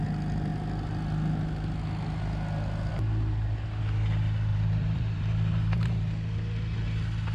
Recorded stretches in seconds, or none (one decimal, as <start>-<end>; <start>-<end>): 0.0-4.5; 6.0-7.3